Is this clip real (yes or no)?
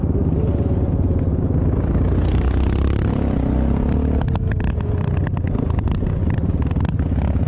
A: yes